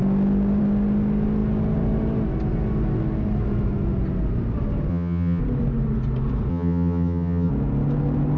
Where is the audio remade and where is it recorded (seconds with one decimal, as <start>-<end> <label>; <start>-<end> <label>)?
0.0-4.9 recorded; 4.9-5.4 remade; 5.4-6.5 recorded; 6.5-7.5 remade; 7.5-8.4 recorded